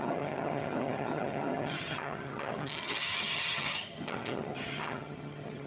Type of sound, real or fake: fake